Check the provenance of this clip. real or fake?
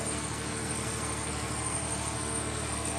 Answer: fake